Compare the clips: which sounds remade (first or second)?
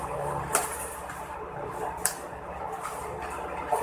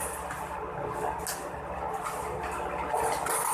first